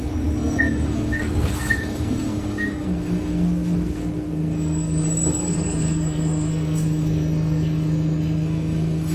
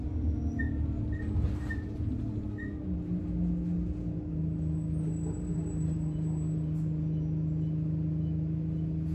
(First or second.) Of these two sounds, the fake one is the first